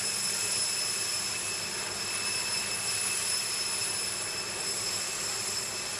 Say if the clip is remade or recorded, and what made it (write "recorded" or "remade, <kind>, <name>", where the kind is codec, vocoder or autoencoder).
recorded